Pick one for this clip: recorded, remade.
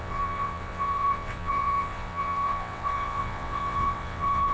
remade